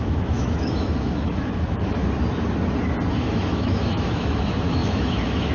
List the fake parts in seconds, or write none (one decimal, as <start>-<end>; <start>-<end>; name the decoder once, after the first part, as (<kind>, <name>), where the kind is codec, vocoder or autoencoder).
0.0-2.0 (autoencoder, DAC-VAE); 3.1-5.5